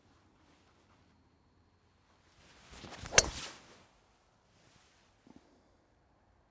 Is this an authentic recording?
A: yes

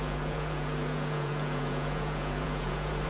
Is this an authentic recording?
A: no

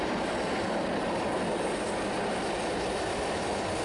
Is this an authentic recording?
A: yes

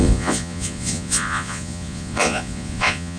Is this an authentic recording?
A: no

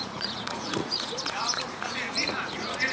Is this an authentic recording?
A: no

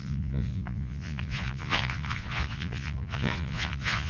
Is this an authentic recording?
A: no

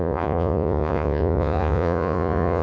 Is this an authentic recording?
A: no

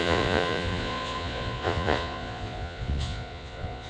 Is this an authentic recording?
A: no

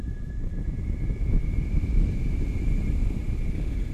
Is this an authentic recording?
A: yes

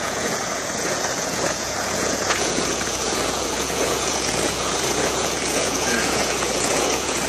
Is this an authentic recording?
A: no